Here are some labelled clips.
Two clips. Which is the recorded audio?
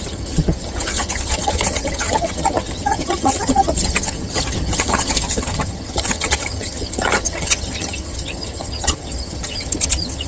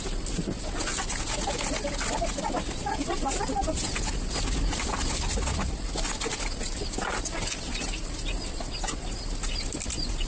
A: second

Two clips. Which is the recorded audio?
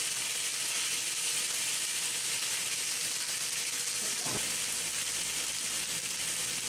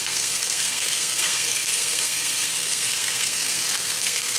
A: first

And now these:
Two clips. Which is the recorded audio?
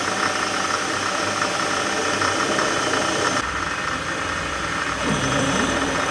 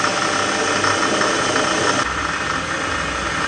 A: second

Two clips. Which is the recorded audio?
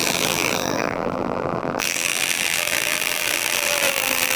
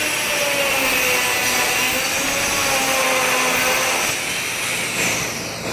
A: second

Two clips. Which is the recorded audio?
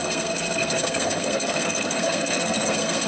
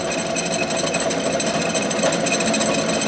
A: second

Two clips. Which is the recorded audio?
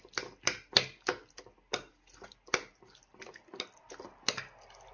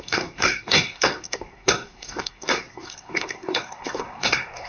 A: first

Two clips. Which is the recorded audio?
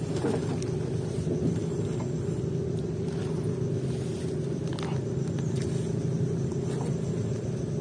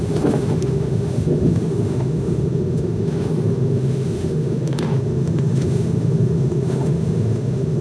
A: first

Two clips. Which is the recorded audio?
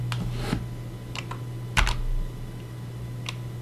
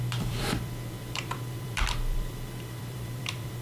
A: first